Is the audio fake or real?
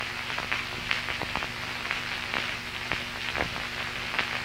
real